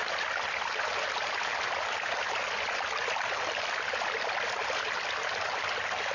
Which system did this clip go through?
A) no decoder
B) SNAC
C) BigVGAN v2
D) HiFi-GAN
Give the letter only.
C